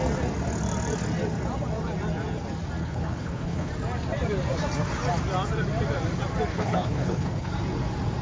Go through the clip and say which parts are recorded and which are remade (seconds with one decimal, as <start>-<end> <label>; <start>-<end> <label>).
0.0-2.8 recorded; 2.8-3.7 remade; 3.7-6.5 recorded; 6.5-7.5 remade; 7.5-8.2 recorded